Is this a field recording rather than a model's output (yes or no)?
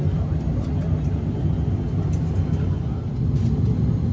yes